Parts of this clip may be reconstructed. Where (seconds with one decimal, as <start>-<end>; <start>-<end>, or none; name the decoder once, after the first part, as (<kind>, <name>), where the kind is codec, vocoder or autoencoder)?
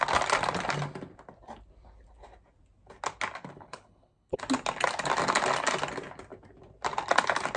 3.4-4.4 (codec, HILCodec)